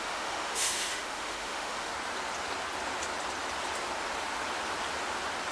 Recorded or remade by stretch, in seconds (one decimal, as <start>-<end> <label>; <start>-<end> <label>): 0.0-1.9 remade; 1.9-5.5 recorded